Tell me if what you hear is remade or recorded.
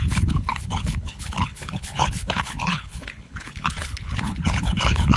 remade